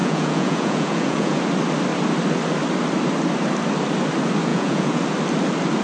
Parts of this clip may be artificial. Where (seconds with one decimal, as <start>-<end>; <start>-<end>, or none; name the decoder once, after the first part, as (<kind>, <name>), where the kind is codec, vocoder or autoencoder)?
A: 0.0-1.4 (vocoder, Vocos); 4.5-5.0